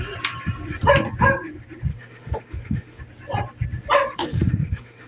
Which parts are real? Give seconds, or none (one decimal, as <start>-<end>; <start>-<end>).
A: 0.0-1.9; 3.0-4.2